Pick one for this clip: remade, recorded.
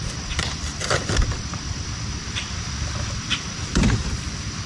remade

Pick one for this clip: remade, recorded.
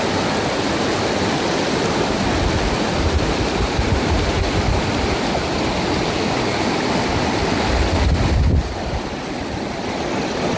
recorded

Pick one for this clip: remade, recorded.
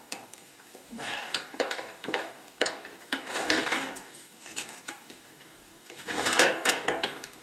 remade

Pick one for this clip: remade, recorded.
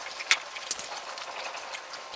recorded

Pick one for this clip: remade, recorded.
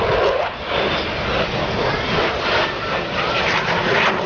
recorded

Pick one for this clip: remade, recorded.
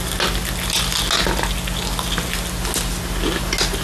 recorded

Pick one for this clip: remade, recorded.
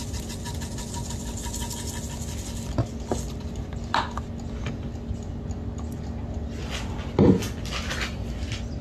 recorded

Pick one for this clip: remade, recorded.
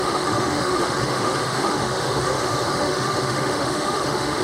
remade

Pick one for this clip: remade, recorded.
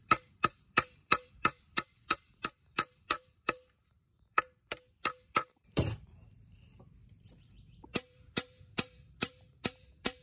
remade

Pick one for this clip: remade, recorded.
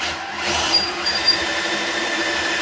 remade